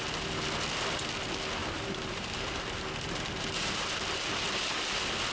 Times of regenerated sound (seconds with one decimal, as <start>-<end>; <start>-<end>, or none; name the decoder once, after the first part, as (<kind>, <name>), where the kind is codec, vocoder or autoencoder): 1.6-4.8 (vocoder, BigVGAN v2)